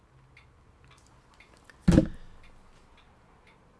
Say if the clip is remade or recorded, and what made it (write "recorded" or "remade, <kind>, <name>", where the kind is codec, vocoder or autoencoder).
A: recorded